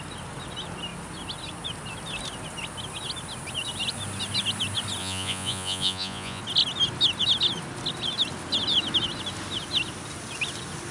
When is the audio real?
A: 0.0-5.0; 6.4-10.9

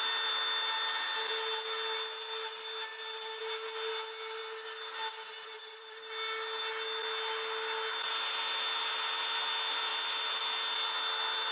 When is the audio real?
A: 0.0-11.5

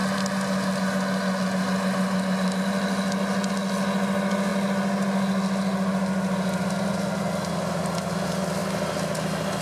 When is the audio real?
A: 0.0-9.6

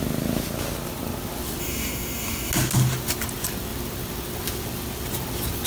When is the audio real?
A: 0.0-1.6; 2.5-5.7

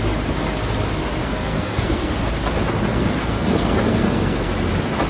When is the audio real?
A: 0.0-1.2; 2.1-2.9; 4.5-5.1

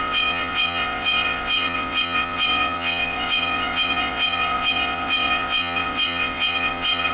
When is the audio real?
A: none

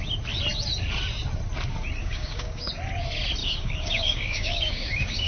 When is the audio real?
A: 0.0-2.0; 2.7-3.4

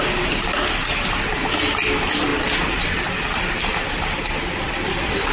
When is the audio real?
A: 0.0-5.3